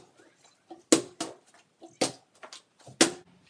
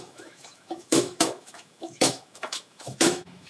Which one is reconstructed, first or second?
second